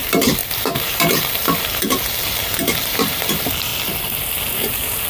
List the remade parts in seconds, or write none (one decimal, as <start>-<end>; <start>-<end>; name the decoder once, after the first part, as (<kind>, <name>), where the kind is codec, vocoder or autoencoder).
0.0-3.7 (vocoder, BigVGAN v2); 4.5-5.1